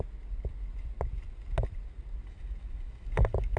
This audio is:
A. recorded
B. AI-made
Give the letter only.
A